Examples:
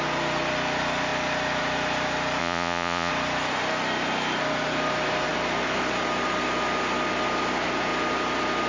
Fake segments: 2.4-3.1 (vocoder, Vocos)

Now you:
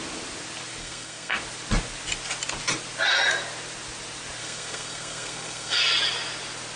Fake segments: 0.8-1.4 (codec, SNAC); 4.4-5.8

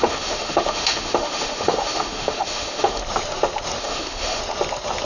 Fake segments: 0.0-3.0 (autoencoder, DAC-VAE); 3.8-4.4

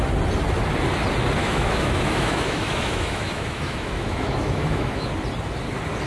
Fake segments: 1.4-5.1 (autoencoder, DAC-VAE)

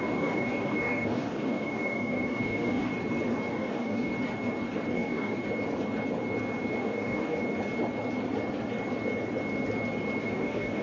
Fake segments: 0.0-2.9 (codec, DAC); 3.5-4.1; 4.9-5.4; 6.8-7.4; 10.2-10.8

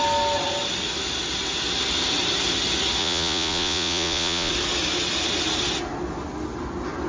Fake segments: 3.0-4.5 (vocoder, Vocos)